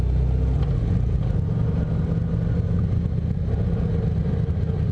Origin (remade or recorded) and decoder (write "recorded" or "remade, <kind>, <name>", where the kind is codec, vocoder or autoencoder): recorded